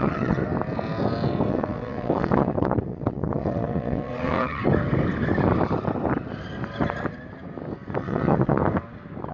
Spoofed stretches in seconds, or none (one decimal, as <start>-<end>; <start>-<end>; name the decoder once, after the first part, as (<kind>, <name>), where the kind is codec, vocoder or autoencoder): 0.0-0.4 (vocoder, WaveNeXt); 1.5-4.6; 8.0-8.6